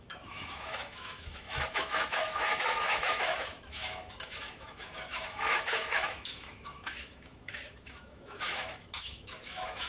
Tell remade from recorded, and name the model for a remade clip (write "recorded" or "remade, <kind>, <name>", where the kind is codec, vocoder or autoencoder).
remade, autoencoder, DAC-VAE